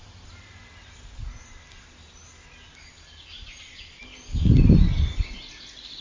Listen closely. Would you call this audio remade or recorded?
recorded